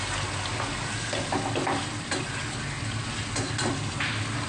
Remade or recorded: recorded